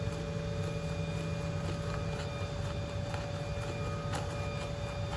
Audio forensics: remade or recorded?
recorded